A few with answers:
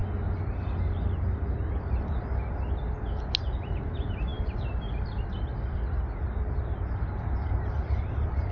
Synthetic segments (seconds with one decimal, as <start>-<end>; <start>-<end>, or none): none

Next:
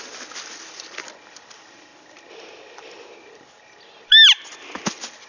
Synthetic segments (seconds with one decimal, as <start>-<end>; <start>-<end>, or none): none

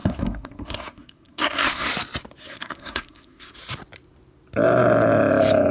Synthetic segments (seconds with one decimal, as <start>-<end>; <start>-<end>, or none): 0.0-1.9; 2.4-3.6

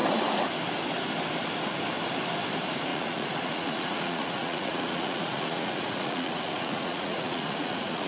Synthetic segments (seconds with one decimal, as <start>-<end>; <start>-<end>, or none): 2.9-8.1